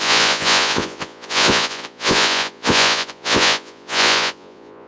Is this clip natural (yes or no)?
no